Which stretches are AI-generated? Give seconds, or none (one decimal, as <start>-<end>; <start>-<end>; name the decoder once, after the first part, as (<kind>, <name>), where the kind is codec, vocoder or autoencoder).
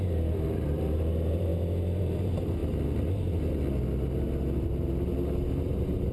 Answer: 0.0-1.5 (vocoder, BigVGAN v2); 2.0-2.6; 5.6-6.1